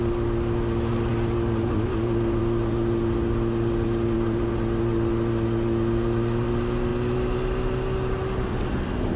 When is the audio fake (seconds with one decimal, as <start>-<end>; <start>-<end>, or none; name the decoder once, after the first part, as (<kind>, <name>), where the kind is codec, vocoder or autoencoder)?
none